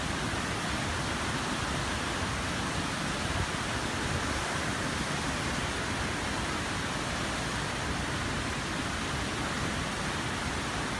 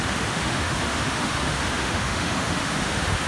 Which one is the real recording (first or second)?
first